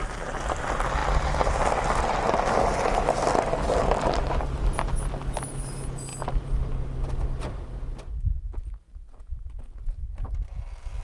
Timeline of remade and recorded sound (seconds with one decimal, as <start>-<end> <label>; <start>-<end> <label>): 0.0-11.0 recorded